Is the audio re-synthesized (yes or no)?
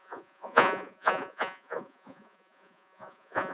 yes